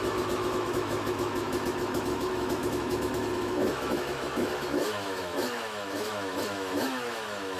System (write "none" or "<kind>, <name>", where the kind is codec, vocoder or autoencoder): autoencoder, DAC-VAE